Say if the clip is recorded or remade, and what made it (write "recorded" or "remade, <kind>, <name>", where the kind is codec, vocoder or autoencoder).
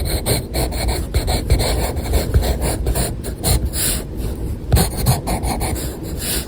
recorded